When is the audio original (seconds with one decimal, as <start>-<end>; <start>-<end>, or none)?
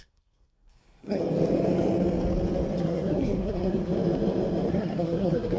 1.2-2.8; 3.9-4.7